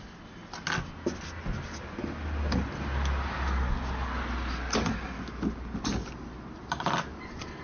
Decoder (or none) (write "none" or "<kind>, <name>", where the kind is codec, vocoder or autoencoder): none